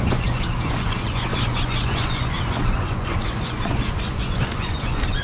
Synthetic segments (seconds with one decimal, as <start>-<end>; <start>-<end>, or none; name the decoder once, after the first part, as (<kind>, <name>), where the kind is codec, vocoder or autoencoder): 0.0-5.2 (vocoder, Vocos)